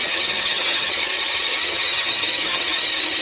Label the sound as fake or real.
fake